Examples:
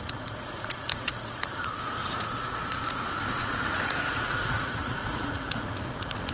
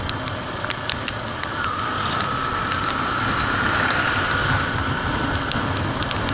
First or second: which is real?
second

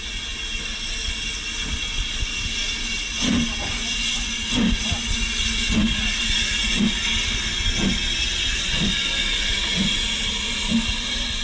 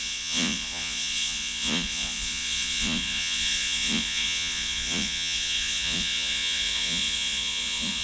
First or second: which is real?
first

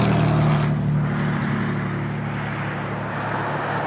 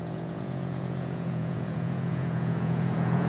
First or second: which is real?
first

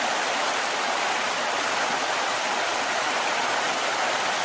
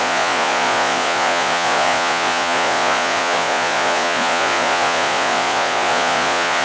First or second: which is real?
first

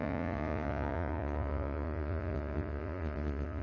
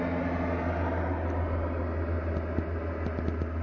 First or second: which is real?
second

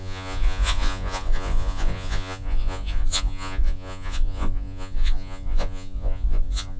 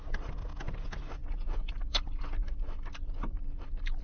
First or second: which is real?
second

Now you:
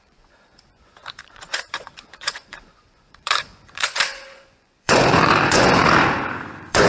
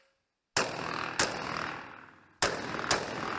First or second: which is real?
second